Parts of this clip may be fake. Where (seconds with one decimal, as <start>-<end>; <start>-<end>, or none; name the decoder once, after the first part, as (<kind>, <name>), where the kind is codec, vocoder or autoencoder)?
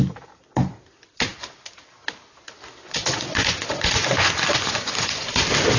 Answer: 2.8-5.3 (vocoder, Vocos)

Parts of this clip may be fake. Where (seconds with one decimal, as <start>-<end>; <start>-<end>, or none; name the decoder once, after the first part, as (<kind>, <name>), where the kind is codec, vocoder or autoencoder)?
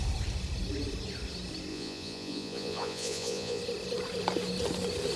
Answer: 1.7-3.6 (vocoder, Vocos)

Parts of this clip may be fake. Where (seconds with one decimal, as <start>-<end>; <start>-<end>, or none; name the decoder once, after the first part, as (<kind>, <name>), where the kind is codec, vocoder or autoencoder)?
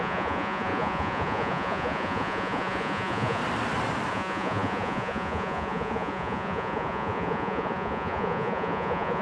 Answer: 0.0-3.4 (vocoder, Vocos); 4.1-9.2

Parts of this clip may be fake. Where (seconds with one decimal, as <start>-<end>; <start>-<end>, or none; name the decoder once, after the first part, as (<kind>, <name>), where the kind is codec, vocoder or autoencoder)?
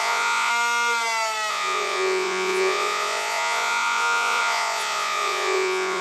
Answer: 0.0-0.5 (vocoder, Vocos); 1.5-6.0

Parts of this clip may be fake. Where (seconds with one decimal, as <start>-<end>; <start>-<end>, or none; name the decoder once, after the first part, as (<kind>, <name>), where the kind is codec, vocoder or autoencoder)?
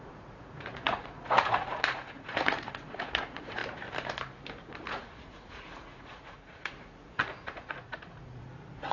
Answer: 0.0-3.6 (vocoder, Vocos); 4.7-8.9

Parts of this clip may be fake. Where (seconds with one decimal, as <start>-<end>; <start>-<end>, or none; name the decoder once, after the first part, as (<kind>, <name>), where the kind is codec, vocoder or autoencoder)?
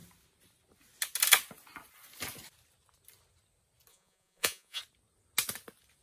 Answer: 3.9-4.8 (vocoder, Vocos)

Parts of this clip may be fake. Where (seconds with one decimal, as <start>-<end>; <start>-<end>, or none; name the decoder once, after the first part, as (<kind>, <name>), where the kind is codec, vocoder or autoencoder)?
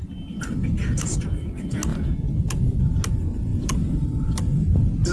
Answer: 1.9-2.8 (vocoder, Vocos); 3.5-4.0